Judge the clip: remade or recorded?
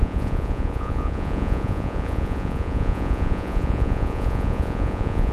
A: remade